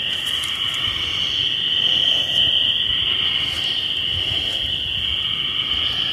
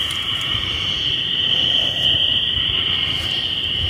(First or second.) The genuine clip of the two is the first